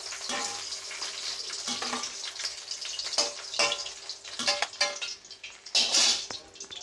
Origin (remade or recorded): recorded